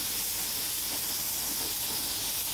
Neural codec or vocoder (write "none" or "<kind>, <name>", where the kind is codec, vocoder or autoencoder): none